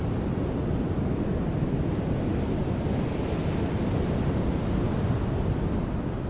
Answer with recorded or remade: recorded